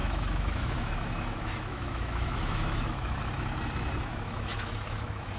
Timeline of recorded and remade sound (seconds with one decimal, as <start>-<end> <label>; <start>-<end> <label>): 0.0-3.2 remade; 3.2-4.1 recorded; 4.1-5.4 remade